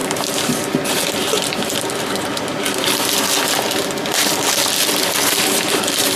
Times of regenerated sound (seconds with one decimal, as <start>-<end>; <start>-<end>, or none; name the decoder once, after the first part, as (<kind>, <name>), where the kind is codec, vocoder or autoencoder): 0.0-6.2 (vocoder, BigVGAN v2)

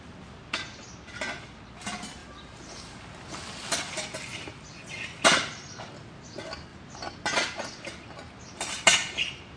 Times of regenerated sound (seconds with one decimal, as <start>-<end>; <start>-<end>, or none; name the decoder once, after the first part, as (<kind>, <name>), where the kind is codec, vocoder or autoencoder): none

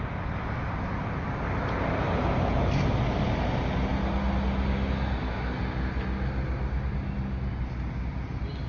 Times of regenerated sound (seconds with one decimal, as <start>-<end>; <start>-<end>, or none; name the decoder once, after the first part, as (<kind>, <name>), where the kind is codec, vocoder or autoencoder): none

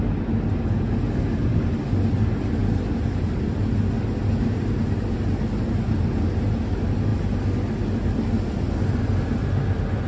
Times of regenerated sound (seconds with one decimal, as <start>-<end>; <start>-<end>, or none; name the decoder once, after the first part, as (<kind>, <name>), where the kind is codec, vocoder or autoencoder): none

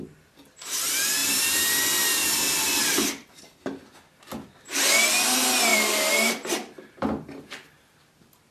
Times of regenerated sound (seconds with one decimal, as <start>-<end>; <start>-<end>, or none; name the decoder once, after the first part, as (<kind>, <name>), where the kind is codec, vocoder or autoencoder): 1.2-3.4 (vocoder, BigVGAN v2); 5.7-7.7